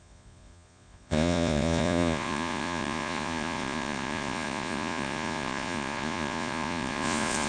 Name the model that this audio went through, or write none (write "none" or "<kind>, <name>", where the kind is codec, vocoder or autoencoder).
vocoder, Vocos